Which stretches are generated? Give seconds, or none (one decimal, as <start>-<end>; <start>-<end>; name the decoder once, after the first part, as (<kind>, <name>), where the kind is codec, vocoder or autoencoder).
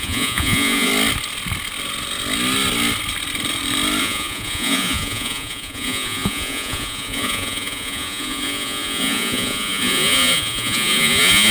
0.0-0.9 (vocoder, Vocos); 4.0-11.5